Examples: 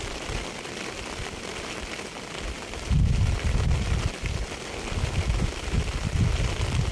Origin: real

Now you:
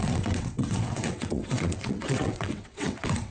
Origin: fake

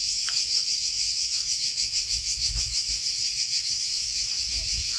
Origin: fake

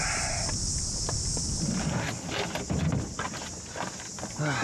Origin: real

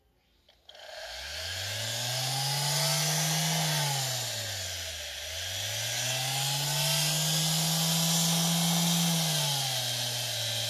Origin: real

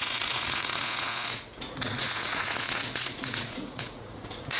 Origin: fake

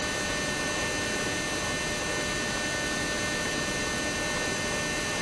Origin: real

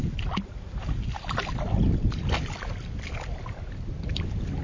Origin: real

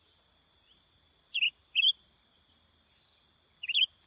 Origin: real